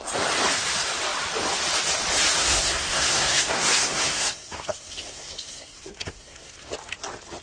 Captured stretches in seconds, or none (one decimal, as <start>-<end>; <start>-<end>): 0.0-2.4; 6.7-7.4